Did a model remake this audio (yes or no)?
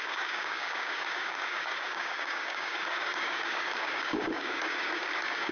yes